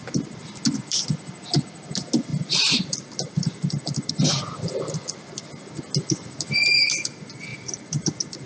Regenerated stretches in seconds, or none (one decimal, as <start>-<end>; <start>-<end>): 2.3-4.1; 7.5-8.1